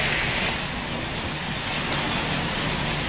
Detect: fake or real real